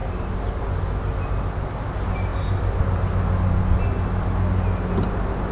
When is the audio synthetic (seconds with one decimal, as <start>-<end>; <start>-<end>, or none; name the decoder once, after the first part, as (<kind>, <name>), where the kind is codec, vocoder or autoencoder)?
none